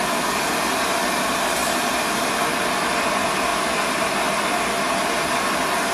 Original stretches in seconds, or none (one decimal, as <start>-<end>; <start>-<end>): 0.0-1.6; 2.8-5.9